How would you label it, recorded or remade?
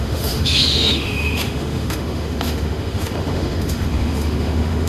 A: remade